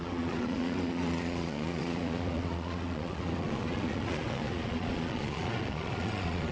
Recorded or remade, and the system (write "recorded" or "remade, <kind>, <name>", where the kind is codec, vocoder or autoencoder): remade, vocoder, Vocos